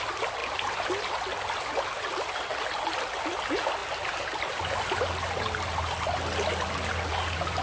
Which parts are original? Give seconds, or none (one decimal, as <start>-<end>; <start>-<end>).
0.0-7.6